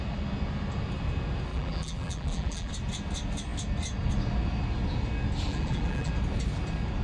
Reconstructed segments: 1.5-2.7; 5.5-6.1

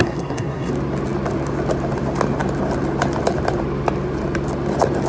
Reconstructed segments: 0.0-0.7